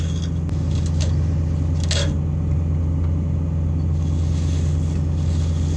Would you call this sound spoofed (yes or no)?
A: no